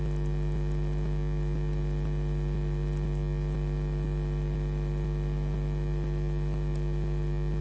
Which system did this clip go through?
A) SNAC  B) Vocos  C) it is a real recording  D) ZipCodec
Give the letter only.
C